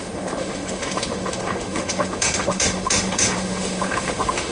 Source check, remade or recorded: remade